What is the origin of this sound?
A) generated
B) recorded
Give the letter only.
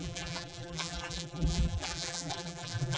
A